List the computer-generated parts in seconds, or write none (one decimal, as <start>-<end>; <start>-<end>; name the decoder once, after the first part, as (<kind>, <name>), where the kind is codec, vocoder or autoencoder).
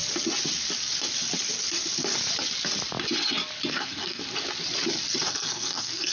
3.7-4.2 (codec, SNAC); 5.3-6.1